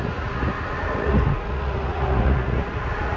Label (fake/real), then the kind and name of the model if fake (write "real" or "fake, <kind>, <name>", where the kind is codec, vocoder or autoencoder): fake, vocoder, Vocos